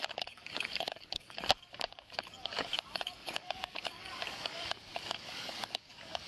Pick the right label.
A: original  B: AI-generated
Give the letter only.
B